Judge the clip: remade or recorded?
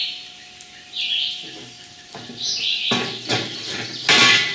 recorded